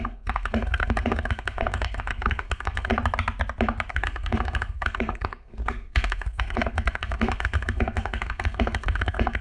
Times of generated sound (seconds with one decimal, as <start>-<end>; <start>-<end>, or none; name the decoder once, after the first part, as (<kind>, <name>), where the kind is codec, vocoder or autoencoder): 0.0-2.9 (codec, SNAC); 3.9-9.4